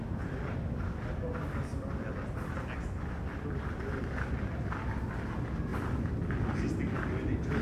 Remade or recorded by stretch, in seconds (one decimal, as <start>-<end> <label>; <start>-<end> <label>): 0.0-7.6 recorded